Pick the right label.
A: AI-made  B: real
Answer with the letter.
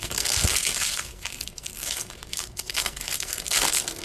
A